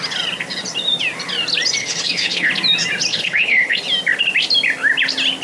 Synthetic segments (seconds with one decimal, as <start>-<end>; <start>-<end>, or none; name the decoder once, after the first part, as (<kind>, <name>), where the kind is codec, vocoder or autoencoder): 1.8-2.5 (codec, HILCodec); 3.1-3.8